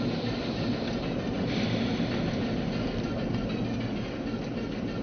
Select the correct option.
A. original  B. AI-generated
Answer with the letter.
A